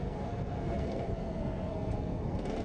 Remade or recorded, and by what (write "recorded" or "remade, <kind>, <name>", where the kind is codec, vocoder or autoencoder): remade, codec, SNAC